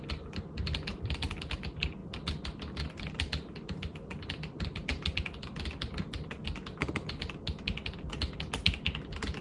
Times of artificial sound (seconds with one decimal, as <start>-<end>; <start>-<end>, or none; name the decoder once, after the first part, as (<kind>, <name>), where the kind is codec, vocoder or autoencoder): none